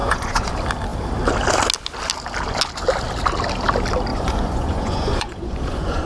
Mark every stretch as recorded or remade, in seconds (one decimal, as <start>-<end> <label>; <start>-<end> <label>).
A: 0.0-0.5 remade; 0.5-4.1 recorded; 4.1-6.1 remade